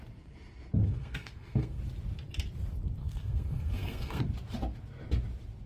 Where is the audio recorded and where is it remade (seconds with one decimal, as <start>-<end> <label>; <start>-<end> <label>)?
0.0-0.8 recorded; 0.8-1.8 remade; 1.8-3.0 recorded; 3.0-4.2 remade; 4.2-5.7 recorded